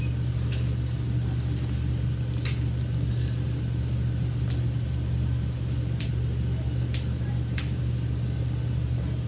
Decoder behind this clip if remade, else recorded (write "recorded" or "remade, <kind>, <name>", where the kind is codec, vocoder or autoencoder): recorded